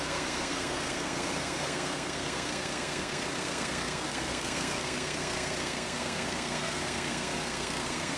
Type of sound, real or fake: fake